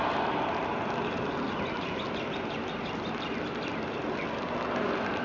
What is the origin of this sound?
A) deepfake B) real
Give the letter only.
B